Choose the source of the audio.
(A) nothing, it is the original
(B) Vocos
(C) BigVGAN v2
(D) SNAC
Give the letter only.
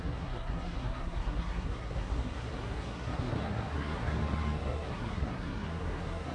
D